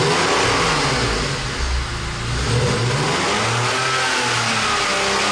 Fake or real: real